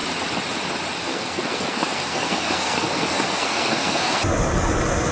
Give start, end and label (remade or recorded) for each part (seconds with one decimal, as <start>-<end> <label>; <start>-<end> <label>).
0.0-1.1 recorded; 1.1-4.2 remade; 4.2-5.1 recorded